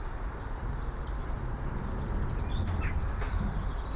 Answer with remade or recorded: recorded